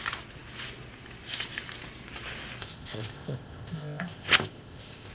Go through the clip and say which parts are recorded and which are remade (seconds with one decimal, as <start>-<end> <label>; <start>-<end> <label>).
0.0-2.6 recorded; 2.6-5.1 remade